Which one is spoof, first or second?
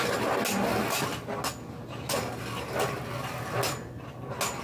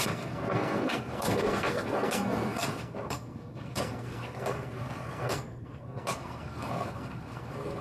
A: second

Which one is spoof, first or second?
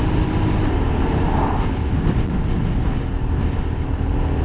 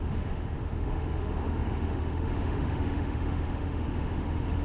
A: second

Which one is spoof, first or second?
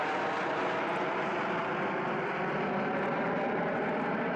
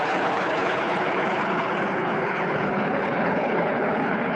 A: second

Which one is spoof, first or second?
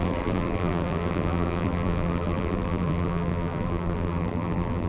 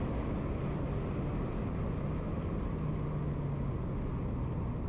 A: first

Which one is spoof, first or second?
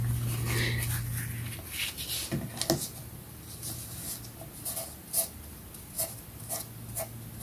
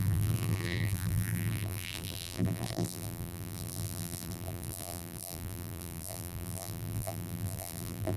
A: second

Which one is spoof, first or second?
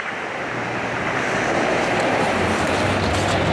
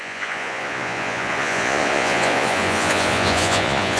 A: second